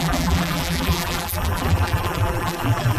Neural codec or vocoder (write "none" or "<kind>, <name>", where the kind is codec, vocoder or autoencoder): vocoder, BigVGAN v2